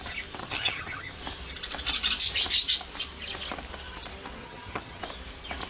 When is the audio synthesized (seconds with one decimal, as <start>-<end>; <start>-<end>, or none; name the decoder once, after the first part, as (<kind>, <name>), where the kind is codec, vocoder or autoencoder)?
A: 0.4-1.1 (vocoder, HiFi-GAN); 4.4-5.0